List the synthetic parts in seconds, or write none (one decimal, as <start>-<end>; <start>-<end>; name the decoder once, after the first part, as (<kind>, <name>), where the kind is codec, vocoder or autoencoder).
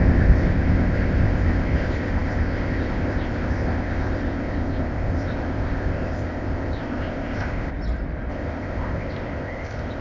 0.0-7.7 (codec, ZipCodec); 8.3-10.0